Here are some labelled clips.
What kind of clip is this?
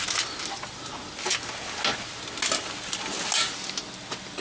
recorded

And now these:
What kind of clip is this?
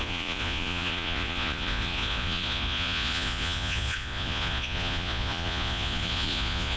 remade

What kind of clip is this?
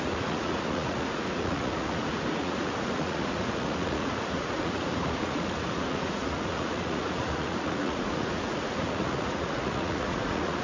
remade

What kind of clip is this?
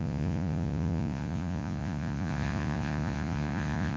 remade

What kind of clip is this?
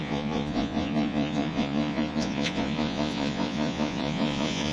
remade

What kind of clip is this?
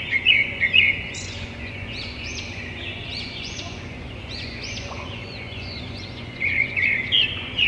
remade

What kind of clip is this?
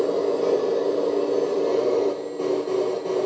recorded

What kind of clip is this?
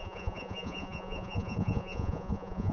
remade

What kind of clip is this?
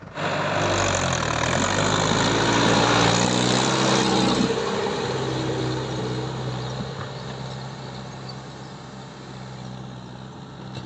recorded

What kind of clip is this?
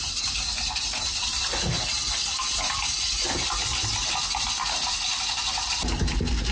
recorded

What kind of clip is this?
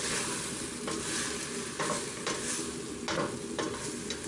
recorded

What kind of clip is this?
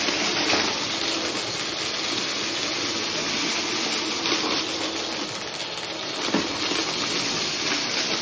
recorded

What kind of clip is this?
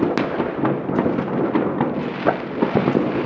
recorded